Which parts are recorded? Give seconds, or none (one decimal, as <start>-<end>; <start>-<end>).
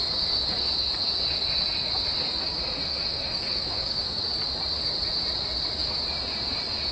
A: 0.0-3.1; 4.2-6.9